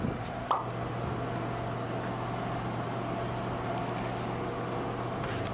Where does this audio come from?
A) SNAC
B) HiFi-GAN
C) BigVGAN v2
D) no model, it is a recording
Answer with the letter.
D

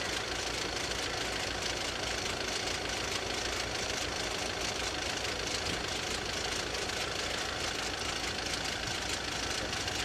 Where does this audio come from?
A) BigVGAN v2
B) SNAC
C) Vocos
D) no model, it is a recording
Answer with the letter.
D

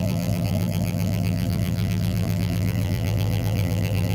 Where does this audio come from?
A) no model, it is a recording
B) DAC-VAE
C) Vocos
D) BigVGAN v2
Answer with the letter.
D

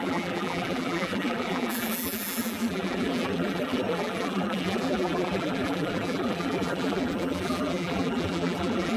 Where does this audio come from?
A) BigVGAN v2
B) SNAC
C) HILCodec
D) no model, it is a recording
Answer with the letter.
A